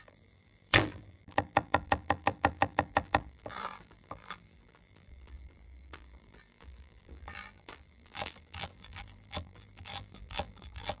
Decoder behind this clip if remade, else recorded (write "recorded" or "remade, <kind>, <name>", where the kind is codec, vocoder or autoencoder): remade, vocoder, BigVGAN v2